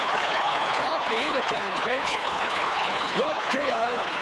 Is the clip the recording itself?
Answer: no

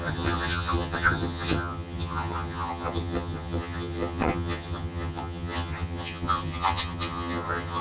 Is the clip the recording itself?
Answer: no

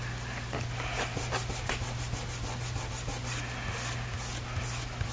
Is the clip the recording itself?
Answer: yes